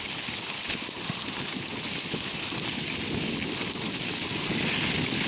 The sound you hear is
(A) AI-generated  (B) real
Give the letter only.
B